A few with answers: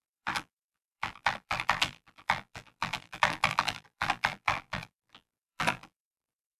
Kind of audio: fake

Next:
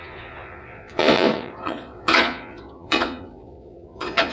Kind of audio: fake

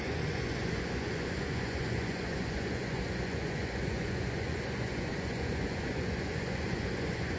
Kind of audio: fake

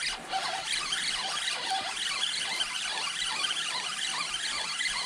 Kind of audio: real